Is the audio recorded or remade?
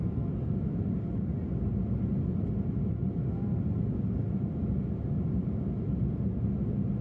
recorded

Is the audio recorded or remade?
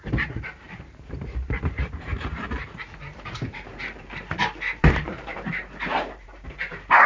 remade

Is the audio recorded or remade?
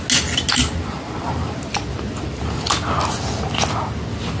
recorded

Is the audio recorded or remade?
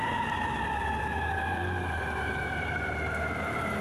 remade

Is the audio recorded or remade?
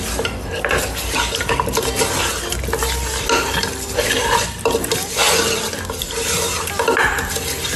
recorded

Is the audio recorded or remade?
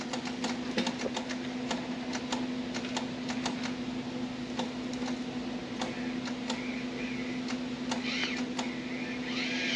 recorded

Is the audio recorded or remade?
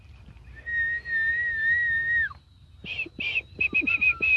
recorded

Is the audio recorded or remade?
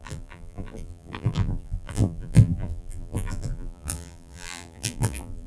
remade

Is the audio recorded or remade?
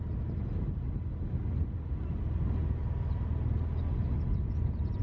recorded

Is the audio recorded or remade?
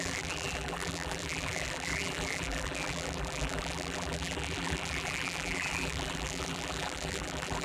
remade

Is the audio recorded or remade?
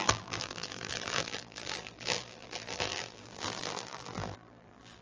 remade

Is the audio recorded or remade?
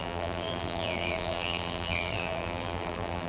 remade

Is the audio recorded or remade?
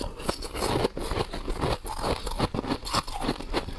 recorded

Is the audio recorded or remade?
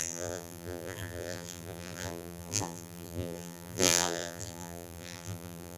remade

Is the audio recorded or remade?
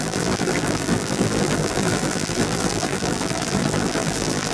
remade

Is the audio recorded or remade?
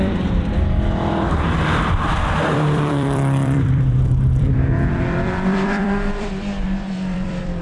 remade